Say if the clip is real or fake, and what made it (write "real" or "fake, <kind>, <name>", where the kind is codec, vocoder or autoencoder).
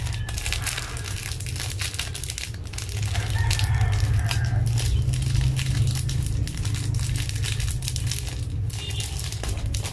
real